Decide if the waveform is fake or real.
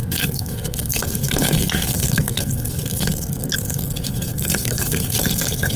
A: fake